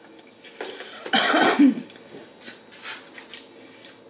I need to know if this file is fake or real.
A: real